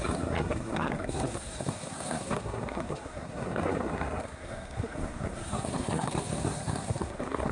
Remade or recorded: remade